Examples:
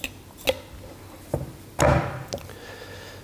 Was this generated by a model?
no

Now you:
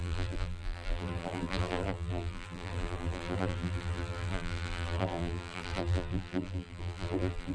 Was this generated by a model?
yes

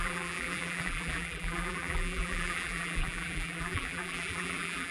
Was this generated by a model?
yes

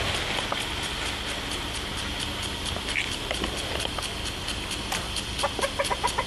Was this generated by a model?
no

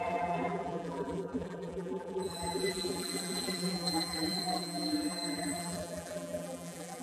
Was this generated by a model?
yes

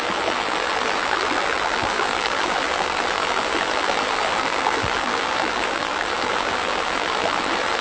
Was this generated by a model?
yes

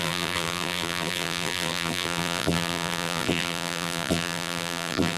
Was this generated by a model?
yes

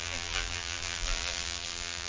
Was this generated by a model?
yes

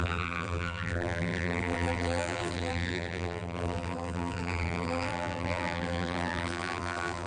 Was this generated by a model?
yes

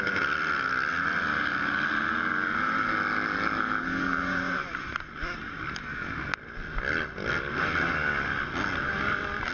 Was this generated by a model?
no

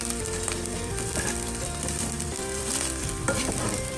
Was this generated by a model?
yes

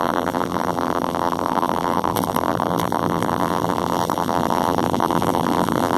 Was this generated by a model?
yes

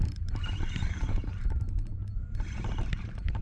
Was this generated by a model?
yes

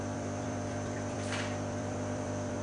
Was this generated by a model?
yes